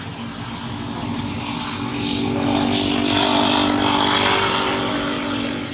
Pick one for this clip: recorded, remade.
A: recorded